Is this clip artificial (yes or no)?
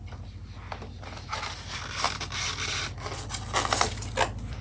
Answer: no